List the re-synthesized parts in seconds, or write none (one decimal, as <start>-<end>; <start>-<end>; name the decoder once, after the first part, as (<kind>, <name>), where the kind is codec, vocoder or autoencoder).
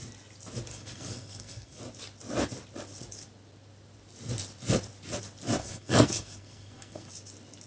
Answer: 0.7-1.8 (codec, SNAC); 5.6-7.1